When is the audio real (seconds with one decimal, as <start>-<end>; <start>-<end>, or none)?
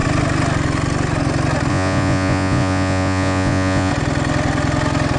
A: 0.0-1.7; 3.9-5.2